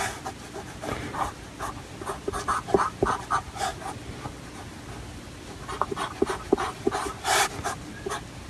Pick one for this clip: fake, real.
real